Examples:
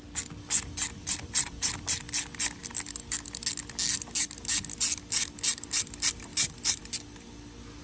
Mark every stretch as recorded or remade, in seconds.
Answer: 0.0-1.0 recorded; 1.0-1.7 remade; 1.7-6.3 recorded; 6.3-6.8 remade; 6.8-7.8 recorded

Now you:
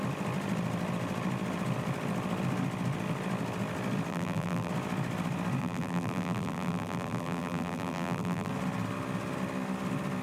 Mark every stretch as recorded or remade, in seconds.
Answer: 0.0-4.1 recorded; 4.1-4.7 remade; 4.7-5.6 recorded; 5.6-8.5 remade; 8.5-10.2 recorded